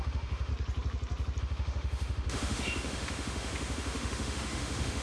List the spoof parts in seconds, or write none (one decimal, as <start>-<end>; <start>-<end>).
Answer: 0.0-0.5; 1.4-5.0

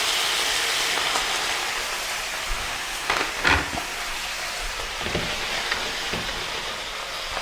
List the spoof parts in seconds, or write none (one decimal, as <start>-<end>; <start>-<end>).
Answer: 2.6-3.3

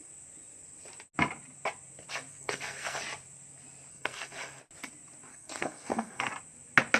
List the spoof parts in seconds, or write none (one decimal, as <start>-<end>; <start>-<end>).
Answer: 2.3-3.0; 3.9-4.6; 5.3-6.3

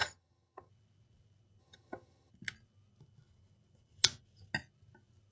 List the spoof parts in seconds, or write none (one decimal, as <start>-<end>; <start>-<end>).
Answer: 0.0-0.7; 1.6-2.3

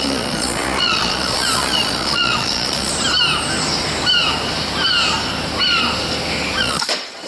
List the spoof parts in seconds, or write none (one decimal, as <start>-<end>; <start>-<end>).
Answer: 0.0-2.9; 6.6-7.3

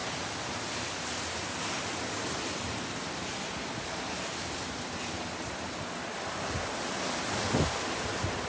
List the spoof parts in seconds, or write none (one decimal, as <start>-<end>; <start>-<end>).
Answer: none